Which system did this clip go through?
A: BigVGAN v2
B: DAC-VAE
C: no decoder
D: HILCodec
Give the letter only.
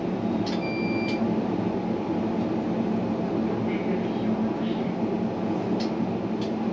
C